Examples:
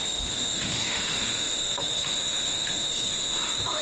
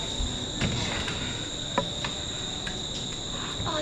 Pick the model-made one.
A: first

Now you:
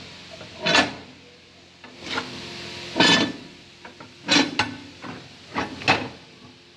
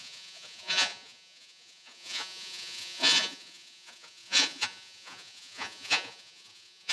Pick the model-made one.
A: second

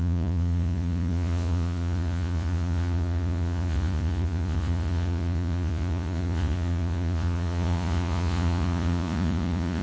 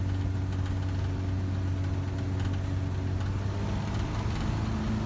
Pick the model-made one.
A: first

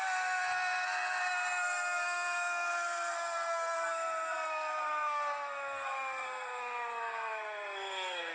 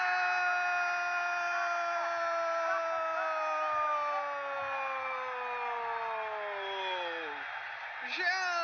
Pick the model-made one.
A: first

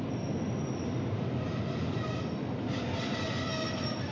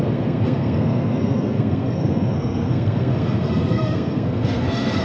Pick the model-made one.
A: second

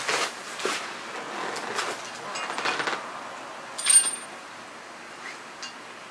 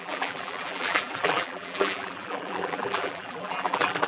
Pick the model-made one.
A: second